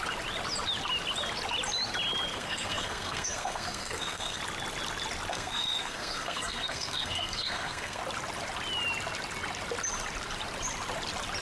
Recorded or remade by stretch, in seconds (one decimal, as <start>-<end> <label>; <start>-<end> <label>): 0.0-2.3 recorded; 2.3-4.4 remade; 4.4-5.3 recorded; 5.3-8.0 remade; 8.0-11.4 recorded